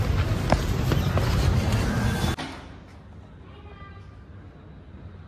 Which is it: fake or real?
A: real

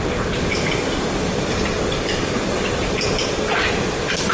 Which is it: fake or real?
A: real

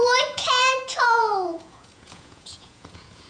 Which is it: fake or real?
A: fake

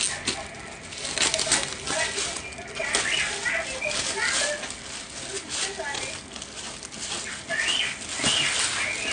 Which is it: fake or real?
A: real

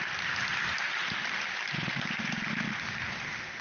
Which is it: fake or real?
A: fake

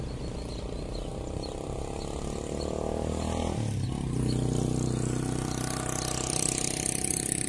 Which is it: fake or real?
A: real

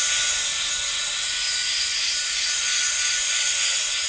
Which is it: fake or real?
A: real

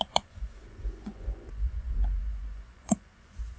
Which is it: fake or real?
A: fake